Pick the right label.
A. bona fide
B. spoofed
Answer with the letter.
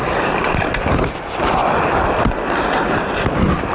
A